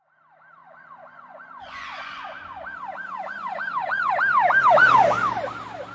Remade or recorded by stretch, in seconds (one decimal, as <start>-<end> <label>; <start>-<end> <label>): 0.0-0.6 recorded; 0.6-4.1 remade; 4.1-5.9 recorded